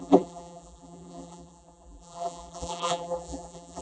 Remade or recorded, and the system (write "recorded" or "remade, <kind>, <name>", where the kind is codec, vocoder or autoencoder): remade, vocoder, BigVGAN v2